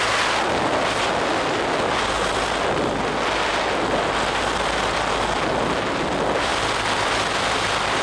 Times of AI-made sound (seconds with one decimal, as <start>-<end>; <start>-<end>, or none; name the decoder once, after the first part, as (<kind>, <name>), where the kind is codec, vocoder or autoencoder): none